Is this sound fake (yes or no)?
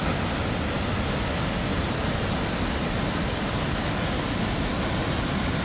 no